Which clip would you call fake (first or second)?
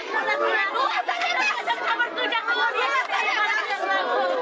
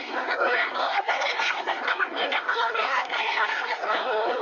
second